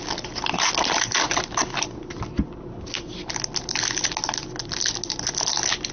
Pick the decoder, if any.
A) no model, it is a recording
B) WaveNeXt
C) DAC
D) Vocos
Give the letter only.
A